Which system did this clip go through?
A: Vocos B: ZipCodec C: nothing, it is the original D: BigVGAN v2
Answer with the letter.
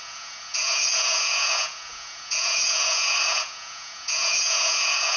A